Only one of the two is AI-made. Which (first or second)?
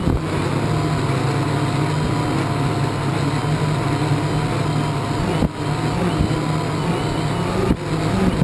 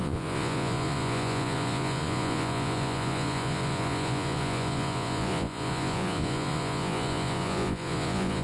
second